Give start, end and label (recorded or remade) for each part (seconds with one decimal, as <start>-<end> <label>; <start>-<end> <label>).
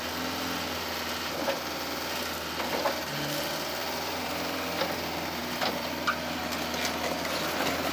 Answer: 0.0-3.8 recorded; 3.8-4.8 remade; 4.8-5.4 recorded; 5.4-6.4 remade; 6.4-7.9 recorded